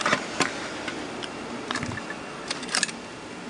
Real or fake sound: fake